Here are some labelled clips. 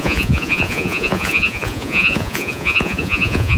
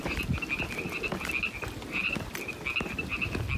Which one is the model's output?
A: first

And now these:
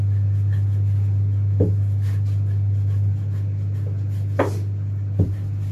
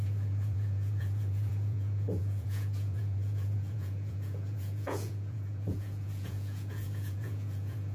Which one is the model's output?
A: second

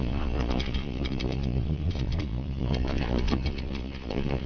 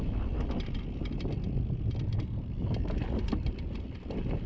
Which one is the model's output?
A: first